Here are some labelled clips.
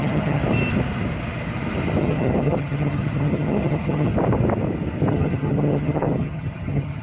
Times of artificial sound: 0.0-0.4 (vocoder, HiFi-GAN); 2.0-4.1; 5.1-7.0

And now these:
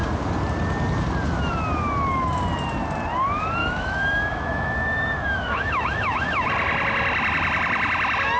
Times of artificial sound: 3.6-6.5 (autoencoder, DAC-VAE)